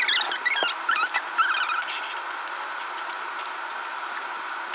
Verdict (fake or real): real